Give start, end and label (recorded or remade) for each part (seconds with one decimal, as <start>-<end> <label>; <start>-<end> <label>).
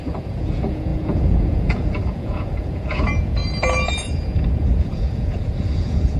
0.0-3.4 remade; 3.4-4.0 recorded; 4.0-6.2 remade